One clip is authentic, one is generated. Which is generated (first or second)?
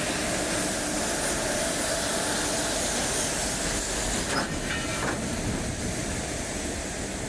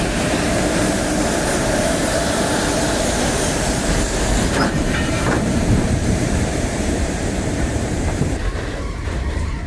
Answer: second